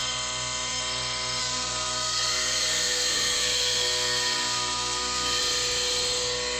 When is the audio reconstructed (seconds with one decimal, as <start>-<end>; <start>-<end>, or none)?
1.4-5.4